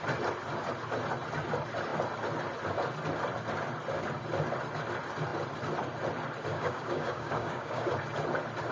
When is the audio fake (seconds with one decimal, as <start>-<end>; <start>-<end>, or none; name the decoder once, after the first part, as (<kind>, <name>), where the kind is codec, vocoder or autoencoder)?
6.5-7.9 (codec, DAC)